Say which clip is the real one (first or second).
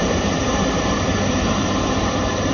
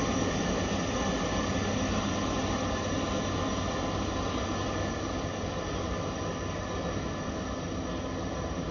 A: second